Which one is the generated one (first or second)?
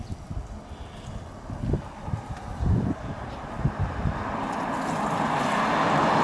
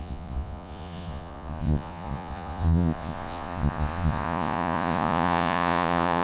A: second